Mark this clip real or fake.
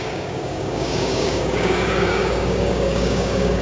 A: fake